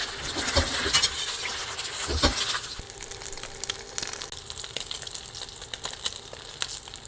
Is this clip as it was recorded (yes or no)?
yes